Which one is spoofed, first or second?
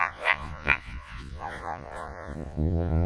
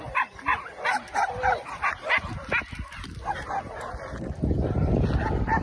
first